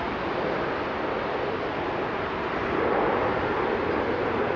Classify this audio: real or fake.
real